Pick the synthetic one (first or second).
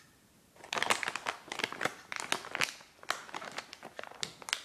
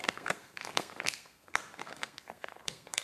second